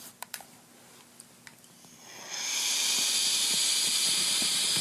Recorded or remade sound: recorded